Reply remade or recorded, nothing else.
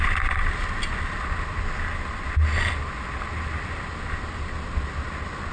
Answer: recorded